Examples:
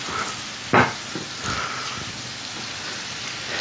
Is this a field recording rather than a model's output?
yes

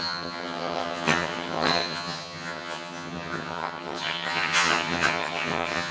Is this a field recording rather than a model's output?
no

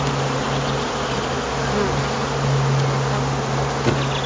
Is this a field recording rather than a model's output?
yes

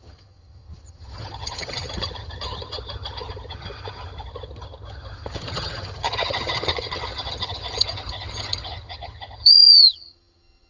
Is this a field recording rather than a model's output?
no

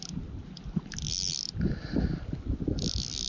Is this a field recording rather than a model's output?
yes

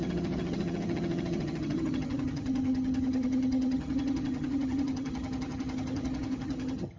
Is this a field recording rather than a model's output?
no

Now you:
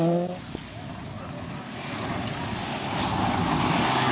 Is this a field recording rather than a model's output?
yes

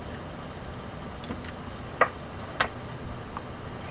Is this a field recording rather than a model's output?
yes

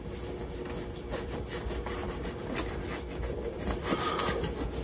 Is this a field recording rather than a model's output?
yes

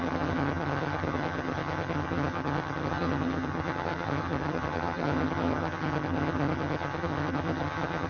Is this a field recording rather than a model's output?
no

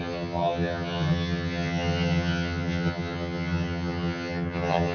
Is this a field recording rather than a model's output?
no